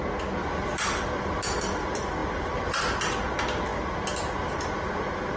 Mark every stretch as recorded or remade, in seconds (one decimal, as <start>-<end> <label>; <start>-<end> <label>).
0.0-0.4 recorded; 0.4-1.4 remade; 1.4-2.2 recorded; 2.2-2.8 remade; 2.8-5.4 recorded